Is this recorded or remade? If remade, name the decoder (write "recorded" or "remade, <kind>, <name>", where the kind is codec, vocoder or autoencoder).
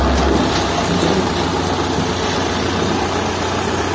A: recorded